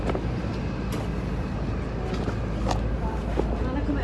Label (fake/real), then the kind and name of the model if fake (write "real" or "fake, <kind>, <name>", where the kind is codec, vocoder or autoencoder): real